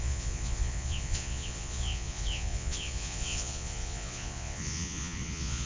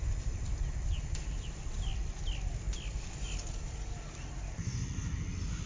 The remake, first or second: first